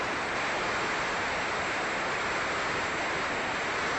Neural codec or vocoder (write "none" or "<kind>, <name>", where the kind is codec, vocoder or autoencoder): none